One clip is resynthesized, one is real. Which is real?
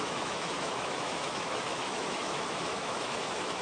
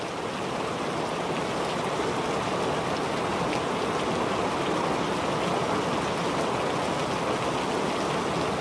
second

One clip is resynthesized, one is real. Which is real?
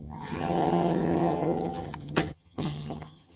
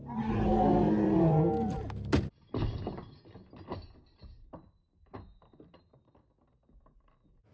second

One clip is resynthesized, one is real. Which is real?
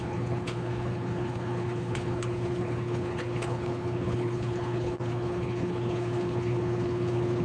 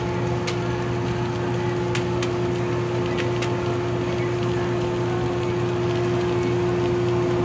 second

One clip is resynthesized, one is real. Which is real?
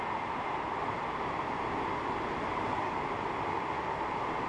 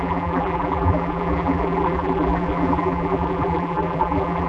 first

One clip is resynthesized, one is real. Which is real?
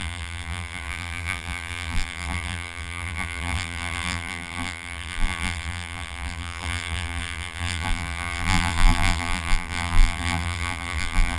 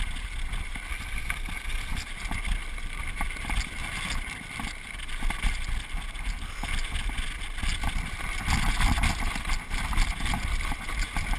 second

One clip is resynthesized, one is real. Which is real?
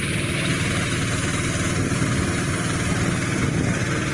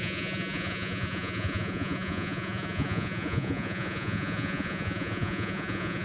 first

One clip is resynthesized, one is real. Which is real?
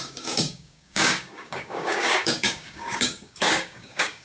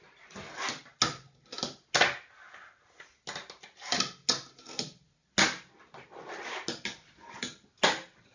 second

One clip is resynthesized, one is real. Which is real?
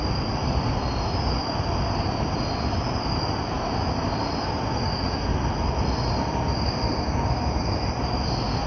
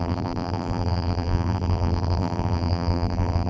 first